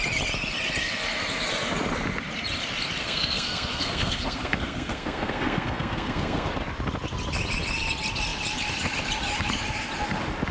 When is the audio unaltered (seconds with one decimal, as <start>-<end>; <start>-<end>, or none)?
0.0-3.0; 6.5-10.5